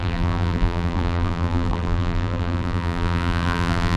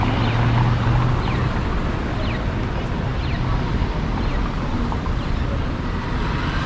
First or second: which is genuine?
second